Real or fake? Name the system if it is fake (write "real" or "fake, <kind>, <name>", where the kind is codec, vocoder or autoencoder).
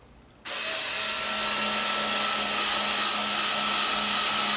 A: real